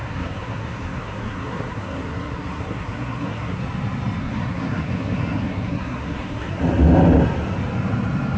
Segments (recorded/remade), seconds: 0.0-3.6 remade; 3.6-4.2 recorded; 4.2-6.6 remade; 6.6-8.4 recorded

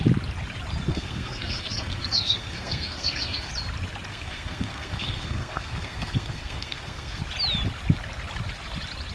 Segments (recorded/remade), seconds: 0.0-0.9 recorded; 0.9-3.5 remade; 3.5-4.1 recorded; 4.1-7.2 remade; 7.2-9.1 recorded

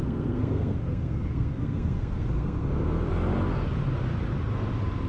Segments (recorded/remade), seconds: 0.0-3.1 remade; 3.1-5.1 recorded

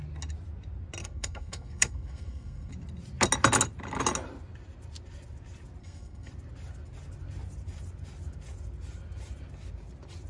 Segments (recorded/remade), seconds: 0.0-1.0 recorded; 1.0-2.7 remade; 2.7-5.8 recorded; 5.8-6.3 remade; 6.3-10.3 recorded

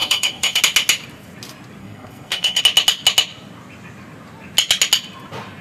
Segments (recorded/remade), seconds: 0.0-0.6 remade; 0.6-1.8 recorded; 1.8-2.6 remade; 2.6-5.6 recorded

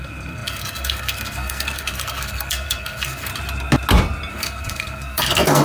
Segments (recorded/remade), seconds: 0.0-3.3 remade; 3.3-4.3 recorded; 4.3-5.6 remade

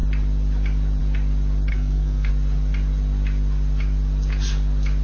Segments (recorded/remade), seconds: 0.0-1.7 recorded; 1.7-2.3 remade; 2.3-5.0 recorded

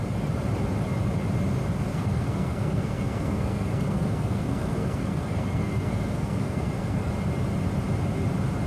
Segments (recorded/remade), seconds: 0.0-1.9 recorded; 1.9-7.1 remade; 7.1-8.7 recorded